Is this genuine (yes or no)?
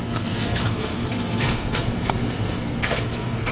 no